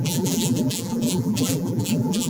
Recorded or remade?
remade